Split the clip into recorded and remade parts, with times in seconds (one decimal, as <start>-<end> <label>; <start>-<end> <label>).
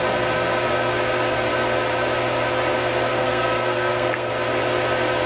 0.0-3.2 recorded; 3.2-4.3 remade; 4.3-5.3 recorded